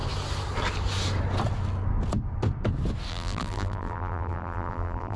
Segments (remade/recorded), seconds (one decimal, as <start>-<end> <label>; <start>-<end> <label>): 0.0-3.1 recorded; 3.1-5.2 remade